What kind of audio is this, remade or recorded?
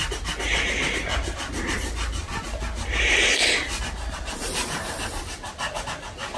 remade